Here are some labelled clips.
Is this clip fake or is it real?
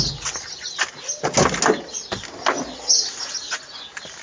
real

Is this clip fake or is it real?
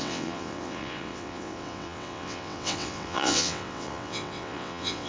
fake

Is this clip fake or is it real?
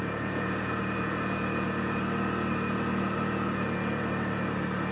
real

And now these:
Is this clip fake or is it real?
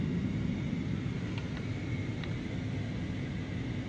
real